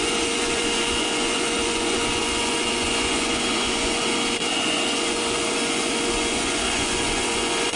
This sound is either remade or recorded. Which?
remade